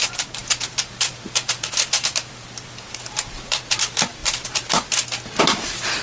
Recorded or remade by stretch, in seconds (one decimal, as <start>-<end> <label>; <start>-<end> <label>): 0.0-6.0 recorded